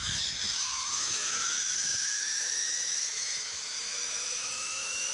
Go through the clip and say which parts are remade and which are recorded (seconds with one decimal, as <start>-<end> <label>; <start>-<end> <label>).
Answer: 0.0-5.1 remade